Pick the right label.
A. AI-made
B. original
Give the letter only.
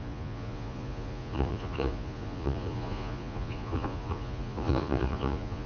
A